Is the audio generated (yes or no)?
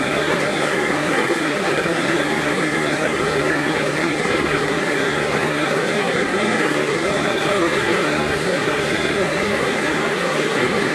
yes